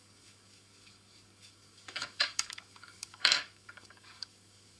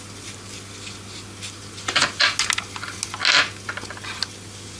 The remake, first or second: first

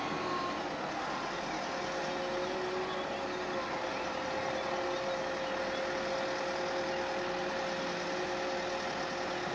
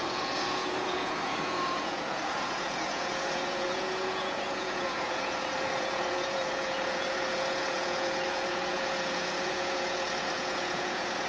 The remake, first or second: second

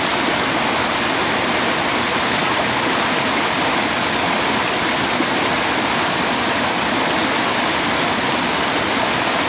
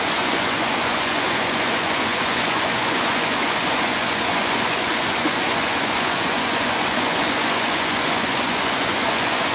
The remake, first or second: second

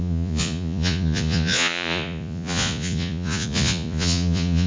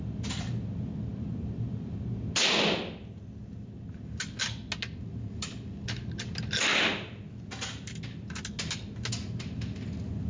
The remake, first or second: first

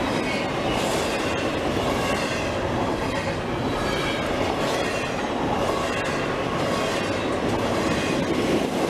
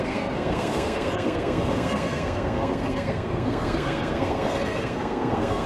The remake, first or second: second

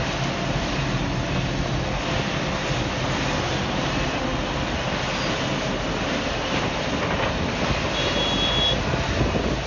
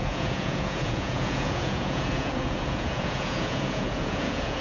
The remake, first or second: second